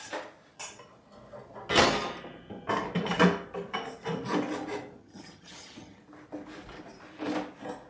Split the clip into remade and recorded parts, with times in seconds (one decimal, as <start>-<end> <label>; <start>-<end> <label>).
0.0-5.0 recorded; 5.0-6.0 remade; 6.0-7.9 recorded